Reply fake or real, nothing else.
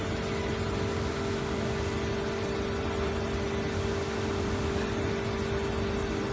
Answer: real